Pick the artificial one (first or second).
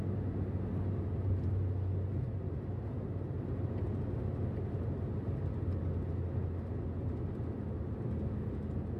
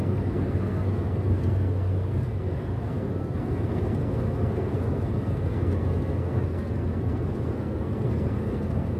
second